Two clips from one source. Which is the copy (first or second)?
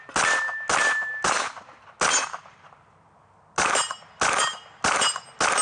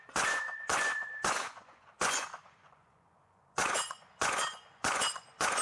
second